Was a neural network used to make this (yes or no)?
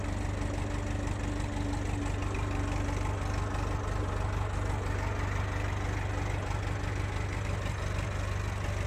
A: no